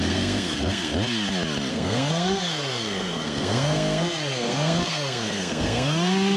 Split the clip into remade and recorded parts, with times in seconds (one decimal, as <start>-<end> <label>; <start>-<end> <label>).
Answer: 0.0-0.9 remade; 0.9-1.7 recorded; 1.7-6.4 remade